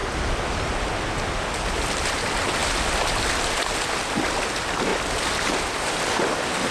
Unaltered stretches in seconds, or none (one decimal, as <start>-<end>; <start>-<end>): 0.0-6.7